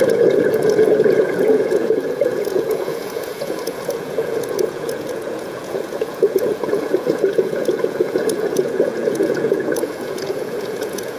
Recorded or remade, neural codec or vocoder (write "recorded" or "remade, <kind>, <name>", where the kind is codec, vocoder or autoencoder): remade, vocoder, Vocos